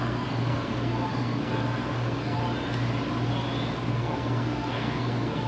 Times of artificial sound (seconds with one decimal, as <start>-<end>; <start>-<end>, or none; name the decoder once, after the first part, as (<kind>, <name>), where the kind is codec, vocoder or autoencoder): 0.0-2.4 (codec, SNAC); 3.9-5.5